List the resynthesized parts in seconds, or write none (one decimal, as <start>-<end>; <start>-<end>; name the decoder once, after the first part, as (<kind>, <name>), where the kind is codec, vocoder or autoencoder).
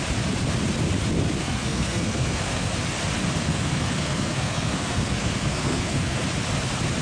1.4-2.7 (codec, SNAC); 3.4-6.2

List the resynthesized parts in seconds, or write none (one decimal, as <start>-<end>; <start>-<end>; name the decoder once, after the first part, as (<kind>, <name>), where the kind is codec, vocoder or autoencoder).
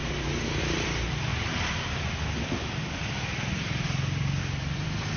0.6-5.2 (vocoder, BigVGAN v2)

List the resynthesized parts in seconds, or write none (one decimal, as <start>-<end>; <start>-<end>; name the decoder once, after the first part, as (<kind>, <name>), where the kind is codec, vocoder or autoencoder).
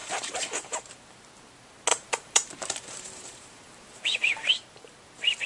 0.0-0.9 (vocoder, BigVGAN v2); 1.9-4.5